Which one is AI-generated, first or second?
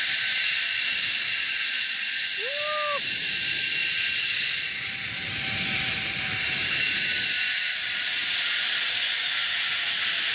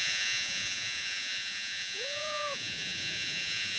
second